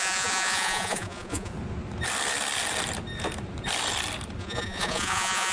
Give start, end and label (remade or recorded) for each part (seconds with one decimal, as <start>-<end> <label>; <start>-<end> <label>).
0.0-1.5 remade; 1.5-4.4 recorded; 4.4-5.5 remade